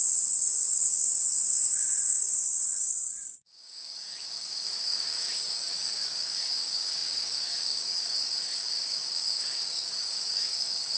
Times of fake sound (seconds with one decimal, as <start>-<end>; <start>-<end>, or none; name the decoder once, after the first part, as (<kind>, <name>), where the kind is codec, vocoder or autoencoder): 0.0-11.0 (codec, DAC)